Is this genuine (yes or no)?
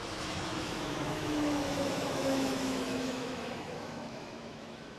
no